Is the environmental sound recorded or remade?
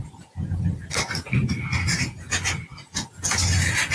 recorded